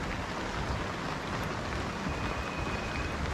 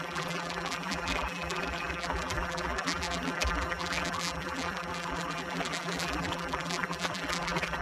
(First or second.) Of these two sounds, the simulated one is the second